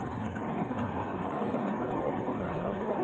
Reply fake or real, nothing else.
fake